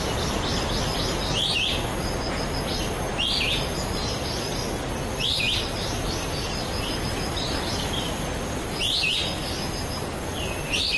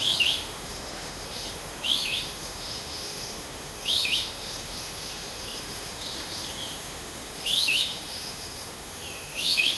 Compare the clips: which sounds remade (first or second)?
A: second